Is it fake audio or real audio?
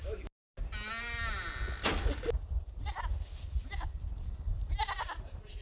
real